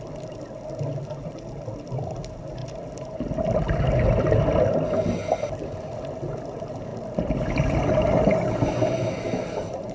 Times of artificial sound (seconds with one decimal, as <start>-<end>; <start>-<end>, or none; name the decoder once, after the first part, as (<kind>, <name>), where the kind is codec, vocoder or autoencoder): none